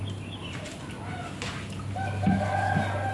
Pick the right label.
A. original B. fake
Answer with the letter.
A